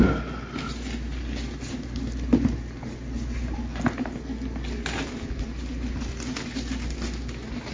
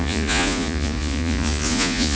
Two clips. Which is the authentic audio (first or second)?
first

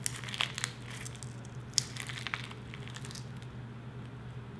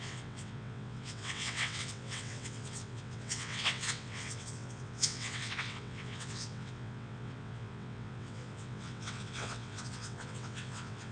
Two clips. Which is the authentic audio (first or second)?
first